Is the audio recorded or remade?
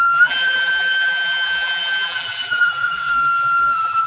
remade